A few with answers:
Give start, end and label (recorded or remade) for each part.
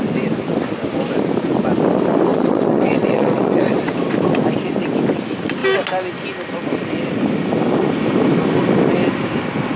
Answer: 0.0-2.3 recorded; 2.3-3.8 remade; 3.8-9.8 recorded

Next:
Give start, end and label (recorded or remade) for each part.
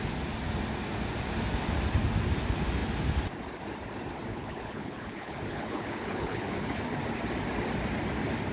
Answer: 0.0-4.3 recorded; 4.3-6.8 remade; 6.8-8.5 recorded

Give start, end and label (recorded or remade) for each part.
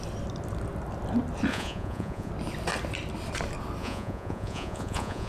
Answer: 0.0-1.5 recorded; 1.5-2.3 remade; 2.3-3.8 recorded; 3.8-5.3 remade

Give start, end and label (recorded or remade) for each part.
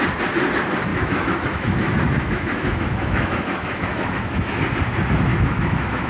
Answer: 0.0-0.9 recorded; 0.9-4.6 remade; 4.6-5.3 recorded; 5.3-6.1 remade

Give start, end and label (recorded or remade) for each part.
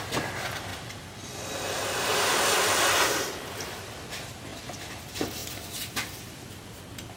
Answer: 0.0-0.7 recorded; 0.7-4.0 remade; 4.0-5.4 recorded; 5.4-6.4 remade; 6.4-7.2 recorded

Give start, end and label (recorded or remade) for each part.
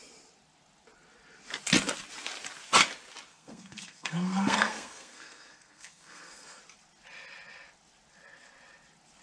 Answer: 0.0-3.3 recorded; 3.3-6.6 remade; 6.6-9.2 recorded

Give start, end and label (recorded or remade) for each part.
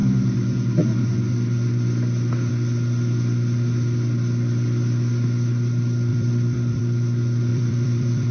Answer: 0.0-6.1 recorded; 6.1-6.8 remade; 6.8-7.5 recorded; 7.5-8.3 remade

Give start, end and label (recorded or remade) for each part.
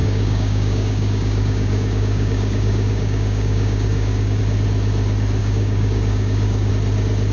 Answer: 0.0-4.4 remade; 4.4-5.4 recorded; 5.4-6.7 remade; 6.7-7.3 recorded